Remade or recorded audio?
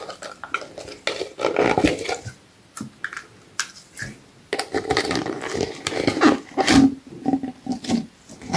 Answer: recorded